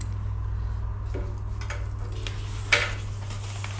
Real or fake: real